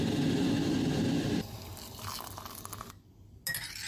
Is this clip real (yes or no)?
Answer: yes